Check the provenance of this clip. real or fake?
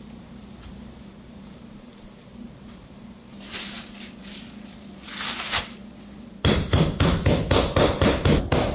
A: fake